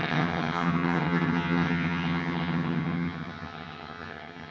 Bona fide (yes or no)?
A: no